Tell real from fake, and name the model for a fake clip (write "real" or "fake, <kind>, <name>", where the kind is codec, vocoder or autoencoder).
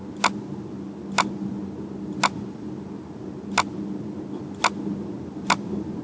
real